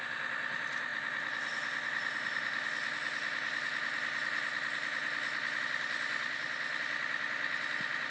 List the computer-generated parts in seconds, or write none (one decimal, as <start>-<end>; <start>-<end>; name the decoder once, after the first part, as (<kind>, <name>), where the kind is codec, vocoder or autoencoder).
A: 0.0-0.9 (vocoder, BigVGAN v2); 5.6-8.1